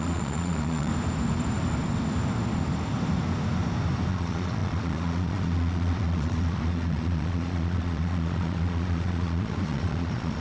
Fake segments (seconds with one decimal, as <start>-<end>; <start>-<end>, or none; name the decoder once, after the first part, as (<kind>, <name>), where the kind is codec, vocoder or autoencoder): 0.0-0.9 (vocoder, Vocos); 4.1-10.4